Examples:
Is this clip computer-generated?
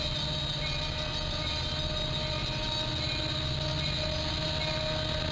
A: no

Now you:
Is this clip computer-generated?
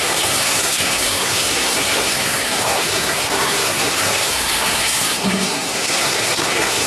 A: yes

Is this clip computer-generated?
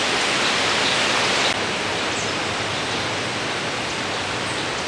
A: no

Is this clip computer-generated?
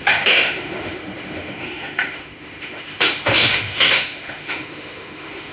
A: yes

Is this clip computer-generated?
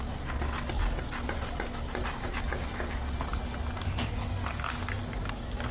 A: no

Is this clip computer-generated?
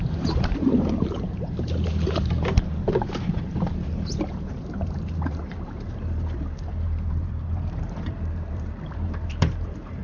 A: yes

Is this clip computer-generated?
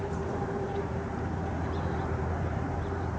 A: yes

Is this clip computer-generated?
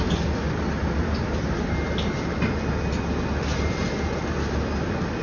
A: no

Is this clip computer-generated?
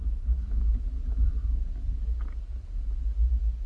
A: no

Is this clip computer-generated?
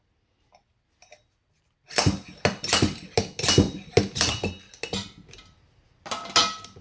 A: no